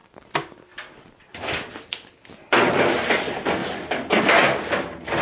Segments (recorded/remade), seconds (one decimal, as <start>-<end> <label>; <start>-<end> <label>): 0.0-5.2 recorded